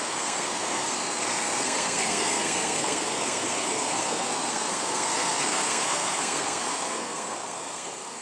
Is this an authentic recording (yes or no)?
no